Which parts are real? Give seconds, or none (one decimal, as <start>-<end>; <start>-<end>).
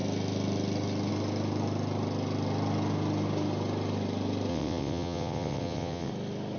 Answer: 0.0-4.5; 6.1-6.6